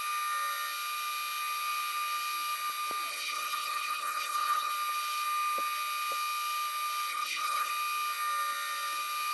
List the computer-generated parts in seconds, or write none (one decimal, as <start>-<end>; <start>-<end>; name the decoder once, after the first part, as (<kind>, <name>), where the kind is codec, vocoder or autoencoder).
3.1-4.7 (codec, HILCodec); 7.1-7.7